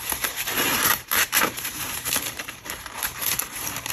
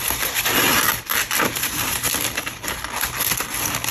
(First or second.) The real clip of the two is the second